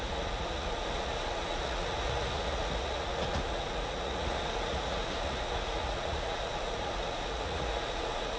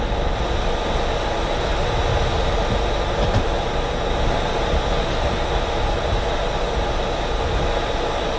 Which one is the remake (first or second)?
first